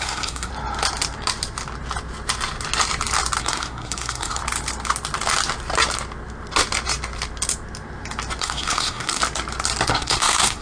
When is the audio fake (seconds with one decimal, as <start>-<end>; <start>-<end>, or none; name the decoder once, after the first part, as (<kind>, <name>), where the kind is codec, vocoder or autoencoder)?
0.0-0.5 (codec, SNAC); 3.4-4.4; 8.4-9.2; 9.9-10.6